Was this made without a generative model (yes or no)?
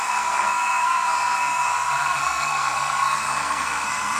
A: no